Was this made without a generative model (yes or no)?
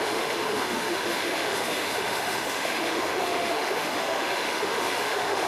no